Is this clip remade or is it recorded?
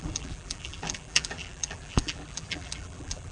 remade